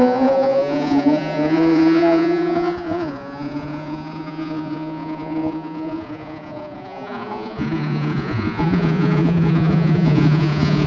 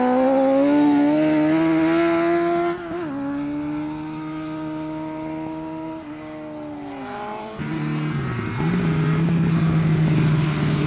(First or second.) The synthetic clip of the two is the first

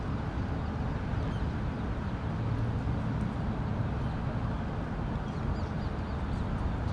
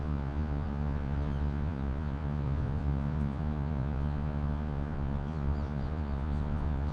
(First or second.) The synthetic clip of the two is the second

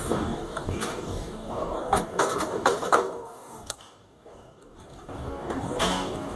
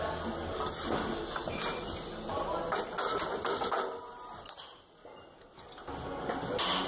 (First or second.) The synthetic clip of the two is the first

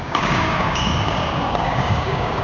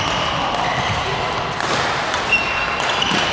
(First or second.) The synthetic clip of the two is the first